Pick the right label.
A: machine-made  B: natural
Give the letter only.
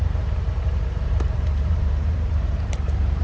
A